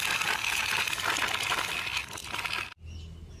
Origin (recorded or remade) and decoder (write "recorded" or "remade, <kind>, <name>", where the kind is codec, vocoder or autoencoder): recorded